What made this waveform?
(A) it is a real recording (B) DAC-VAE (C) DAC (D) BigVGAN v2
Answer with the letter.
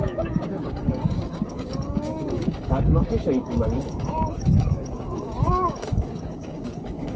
C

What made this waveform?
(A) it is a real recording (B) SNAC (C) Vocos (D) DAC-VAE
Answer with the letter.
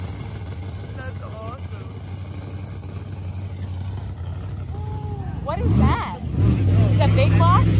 A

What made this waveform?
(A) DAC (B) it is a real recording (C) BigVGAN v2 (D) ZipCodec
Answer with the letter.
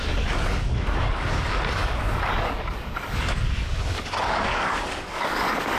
A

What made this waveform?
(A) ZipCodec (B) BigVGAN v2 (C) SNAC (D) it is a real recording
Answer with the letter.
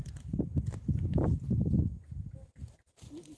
D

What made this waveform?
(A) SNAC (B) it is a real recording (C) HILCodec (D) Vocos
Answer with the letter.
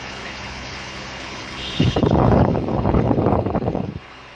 C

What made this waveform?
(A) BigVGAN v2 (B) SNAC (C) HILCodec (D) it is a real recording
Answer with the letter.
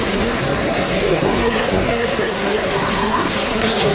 B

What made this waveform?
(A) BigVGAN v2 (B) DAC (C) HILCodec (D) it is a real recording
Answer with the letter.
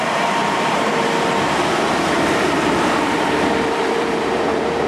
A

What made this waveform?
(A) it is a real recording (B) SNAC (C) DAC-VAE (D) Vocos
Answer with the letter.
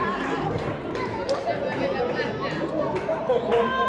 A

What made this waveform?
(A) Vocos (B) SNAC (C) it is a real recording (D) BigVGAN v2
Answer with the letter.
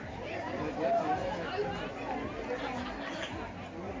C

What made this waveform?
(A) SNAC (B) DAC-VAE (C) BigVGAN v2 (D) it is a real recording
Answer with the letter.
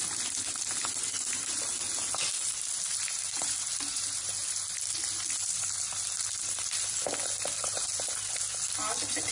D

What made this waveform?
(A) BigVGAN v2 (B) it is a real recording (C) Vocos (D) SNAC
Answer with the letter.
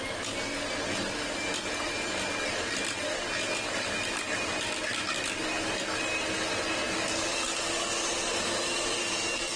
B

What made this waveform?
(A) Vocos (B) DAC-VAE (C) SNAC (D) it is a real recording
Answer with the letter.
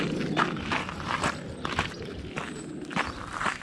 D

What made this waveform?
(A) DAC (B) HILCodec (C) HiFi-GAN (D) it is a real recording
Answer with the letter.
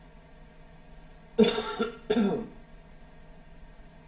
D